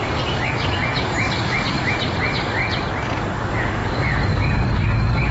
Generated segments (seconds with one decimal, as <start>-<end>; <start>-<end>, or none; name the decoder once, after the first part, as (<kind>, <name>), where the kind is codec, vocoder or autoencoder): 0.0-2.6 (codec, DAC); 3.2-5.3